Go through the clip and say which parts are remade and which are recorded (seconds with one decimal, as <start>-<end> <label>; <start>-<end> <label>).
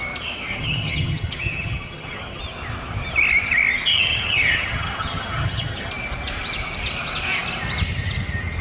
0.0-0.5 recorded; 0.5-2.4 remade; 2.4-3.9 recorded; 3.9-5.9 remade; 5.9-8.6 recorded